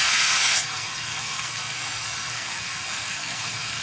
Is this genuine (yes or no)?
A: no